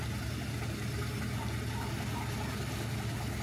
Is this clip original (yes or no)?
yes